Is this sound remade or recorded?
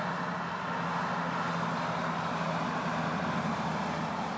recorded